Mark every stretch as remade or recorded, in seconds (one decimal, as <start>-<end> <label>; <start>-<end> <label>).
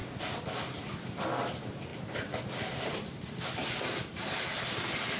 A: 0.0-1.9 recorded; 1.9-2.4 remade; 2.4-5.2 recorded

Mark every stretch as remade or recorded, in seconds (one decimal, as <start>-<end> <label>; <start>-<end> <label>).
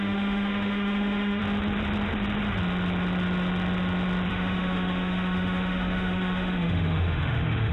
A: 0.0-1.4 remade; 1.4-4.3 recorded; 4.3-7.7 remade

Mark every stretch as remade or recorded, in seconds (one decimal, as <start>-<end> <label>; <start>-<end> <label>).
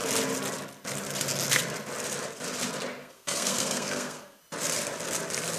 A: 0.0-3.0 recorded; 3.0-4.4 remade; 4.4-5.6 recorded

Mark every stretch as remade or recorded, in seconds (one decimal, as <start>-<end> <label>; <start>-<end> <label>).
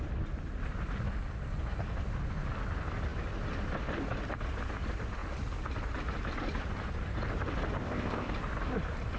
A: 0.0-7.8 recorded; 7.8-8.3 remade; 8.3-9.2 recorded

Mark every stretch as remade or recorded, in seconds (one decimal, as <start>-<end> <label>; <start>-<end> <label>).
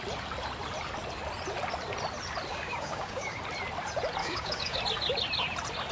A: 0.0-2.5 recorded; 2.5-3.4 remade; 3.4-4.2 recorded; 4.2-4.8 remade; 4.8-5.9 recorded